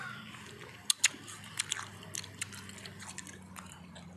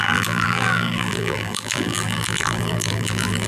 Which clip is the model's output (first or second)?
second